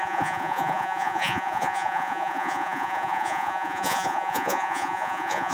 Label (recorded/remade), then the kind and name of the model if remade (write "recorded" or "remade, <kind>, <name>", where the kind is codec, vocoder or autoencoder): remade, vocoder, Vocos